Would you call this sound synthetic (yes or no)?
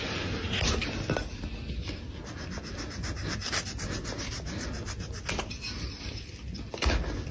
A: no